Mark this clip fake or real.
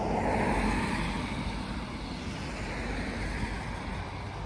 real